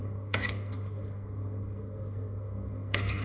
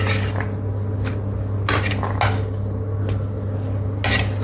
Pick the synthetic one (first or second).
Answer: first